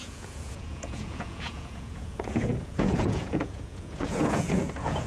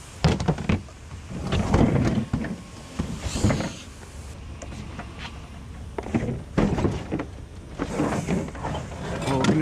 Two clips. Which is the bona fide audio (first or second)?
second